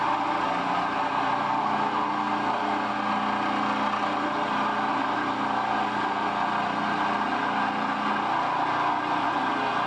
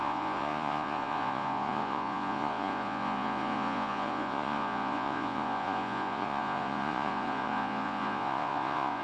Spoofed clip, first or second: second